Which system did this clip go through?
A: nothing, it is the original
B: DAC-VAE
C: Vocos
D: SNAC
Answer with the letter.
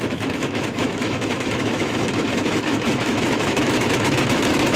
B